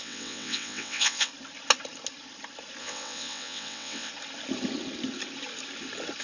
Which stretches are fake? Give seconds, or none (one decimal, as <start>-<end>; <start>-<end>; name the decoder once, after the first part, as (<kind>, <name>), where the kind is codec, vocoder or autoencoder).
0.0-1.3 (vocoder, WaveNeXt); 2.8-4.1